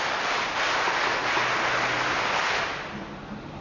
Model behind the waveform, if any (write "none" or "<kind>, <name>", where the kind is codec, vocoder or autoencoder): none